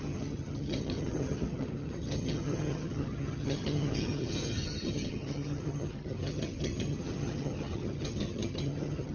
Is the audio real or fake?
fake